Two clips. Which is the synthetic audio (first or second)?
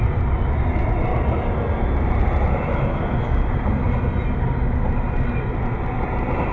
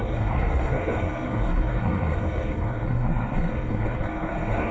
second